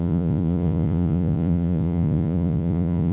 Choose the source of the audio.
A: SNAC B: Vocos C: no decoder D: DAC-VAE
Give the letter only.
B